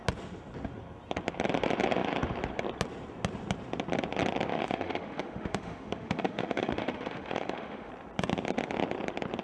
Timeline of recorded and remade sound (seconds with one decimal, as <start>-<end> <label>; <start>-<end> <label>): 0.0-4.5 recorded; 4.5-7.9 remade; 7.9-9.4 recorded